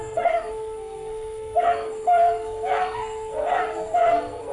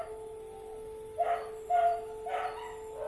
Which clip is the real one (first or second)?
second